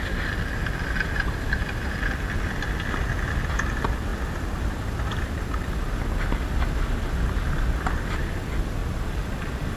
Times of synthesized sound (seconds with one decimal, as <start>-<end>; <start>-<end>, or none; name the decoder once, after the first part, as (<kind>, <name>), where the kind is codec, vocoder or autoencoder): none